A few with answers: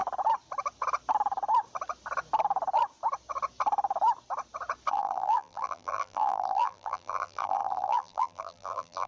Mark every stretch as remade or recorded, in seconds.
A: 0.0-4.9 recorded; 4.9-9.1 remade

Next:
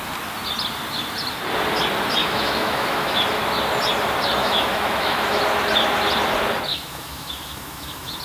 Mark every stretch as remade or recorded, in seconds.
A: 0.0-2.2 recorded; 2.2-3.4 remade; 3.4-4.4 recorded; 4.4-5.4 remade; 5.4-6.7 recorded; 6.7-8.2 remade

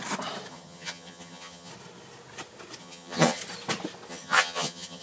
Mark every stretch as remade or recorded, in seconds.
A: 0.0-0.5 recorded; 0.5-1.7 remade; 1.7-2.8 recorded; 2.8-3.4 remade; 3.4-4.1 recorded; 4.1-5.0 remade